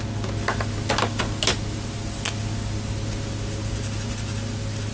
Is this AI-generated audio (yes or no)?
no